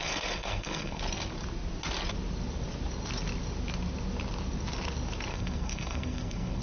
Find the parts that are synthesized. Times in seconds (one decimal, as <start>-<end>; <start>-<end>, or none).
0.0-1.0; 5.3-6.6